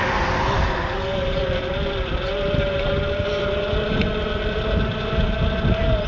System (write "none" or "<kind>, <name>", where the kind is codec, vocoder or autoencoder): none